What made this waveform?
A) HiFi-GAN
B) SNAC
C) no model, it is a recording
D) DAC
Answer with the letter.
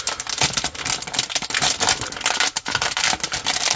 C